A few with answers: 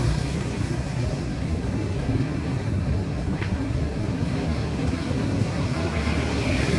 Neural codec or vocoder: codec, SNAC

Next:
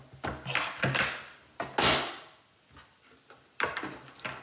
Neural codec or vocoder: none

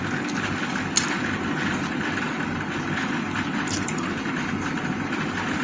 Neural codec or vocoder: none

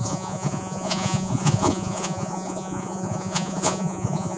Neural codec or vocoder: vocoder, Vocos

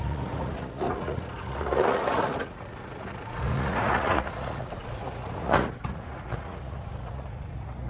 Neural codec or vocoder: vocoder, Vocos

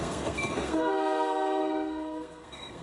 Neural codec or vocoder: codec, SNAC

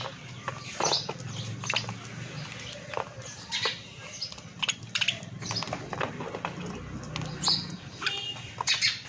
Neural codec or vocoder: none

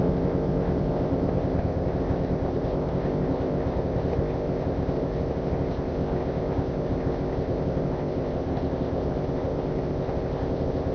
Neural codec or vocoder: codec, ZipCodec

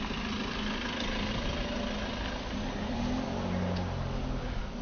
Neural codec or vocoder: none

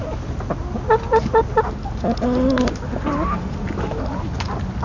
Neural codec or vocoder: none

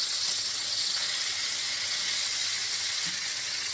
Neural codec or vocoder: vocoder, WaveNeXt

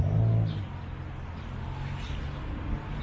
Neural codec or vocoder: none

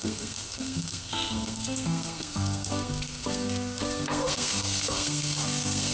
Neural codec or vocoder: codec, SNAC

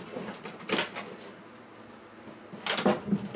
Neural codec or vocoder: none